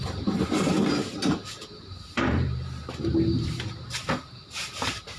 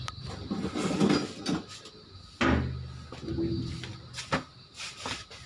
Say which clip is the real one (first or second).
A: second